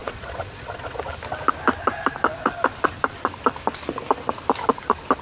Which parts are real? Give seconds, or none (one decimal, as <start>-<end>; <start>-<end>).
1.0-5.2